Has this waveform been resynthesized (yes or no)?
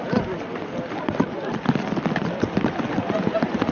no